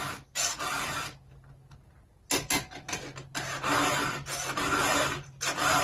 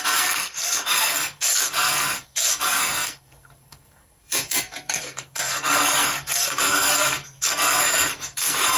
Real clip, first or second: first